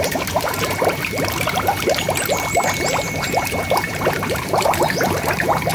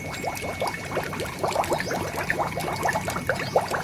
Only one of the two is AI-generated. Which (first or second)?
first